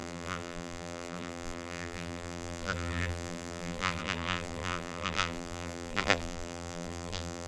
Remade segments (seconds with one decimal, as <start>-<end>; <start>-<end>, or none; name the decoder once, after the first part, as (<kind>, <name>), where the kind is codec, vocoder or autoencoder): 0.0-7.5 (vocoder, BigVGAN v2)